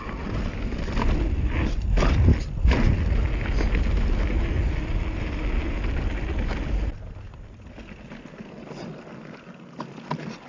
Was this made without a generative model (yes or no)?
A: yes